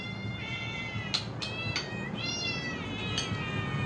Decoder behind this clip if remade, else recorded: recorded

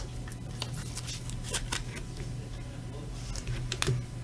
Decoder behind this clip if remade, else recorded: recorded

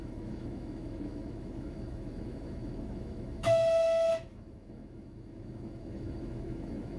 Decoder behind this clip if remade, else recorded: remade, autoencoder, DAC-VAE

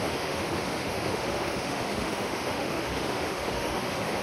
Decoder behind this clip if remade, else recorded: remade, autoencoder, DAC-VAE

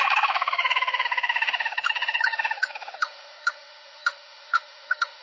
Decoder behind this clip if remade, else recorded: remade, autoencoder, DAC-VAE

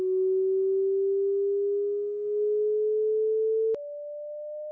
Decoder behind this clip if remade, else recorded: recorded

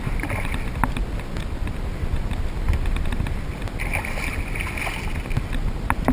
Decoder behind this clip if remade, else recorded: recorded